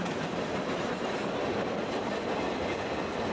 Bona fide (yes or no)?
yes